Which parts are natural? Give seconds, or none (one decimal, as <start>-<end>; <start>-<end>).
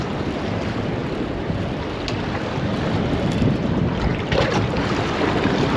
0.0-5.8